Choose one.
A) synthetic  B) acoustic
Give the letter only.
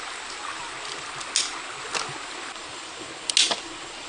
B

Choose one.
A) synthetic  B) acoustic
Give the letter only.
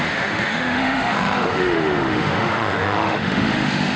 A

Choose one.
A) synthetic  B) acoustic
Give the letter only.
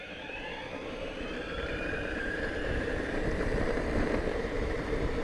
A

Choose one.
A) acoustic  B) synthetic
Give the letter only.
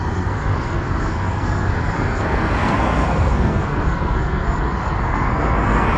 B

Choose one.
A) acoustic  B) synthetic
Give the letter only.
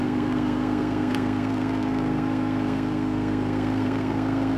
B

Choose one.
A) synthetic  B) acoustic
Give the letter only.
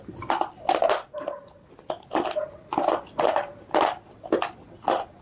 B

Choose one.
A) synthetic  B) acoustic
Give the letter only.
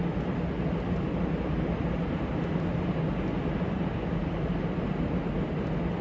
B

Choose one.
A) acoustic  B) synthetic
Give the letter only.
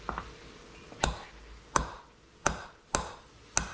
A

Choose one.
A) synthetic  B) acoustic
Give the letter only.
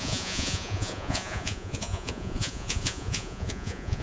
A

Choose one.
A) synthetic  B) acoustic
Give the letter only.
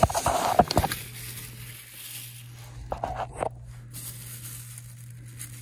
B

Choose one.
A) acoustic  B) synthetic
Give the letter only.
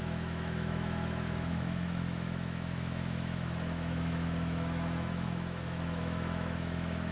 B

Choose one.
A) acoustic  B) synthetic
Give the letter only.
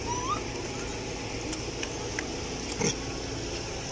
A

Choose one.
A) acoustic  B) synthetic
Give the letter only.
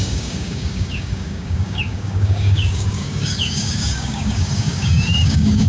B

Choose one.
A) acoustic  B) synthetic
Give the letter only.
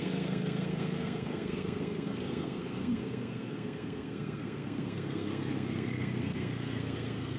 B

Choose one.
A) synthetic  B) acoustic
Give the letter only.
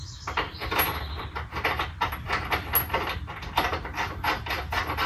B